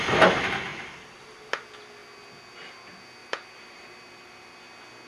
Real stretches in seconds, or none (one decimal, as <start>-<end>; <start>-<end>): 0.0-0.7; 1.2-3.2; 4.6-5.1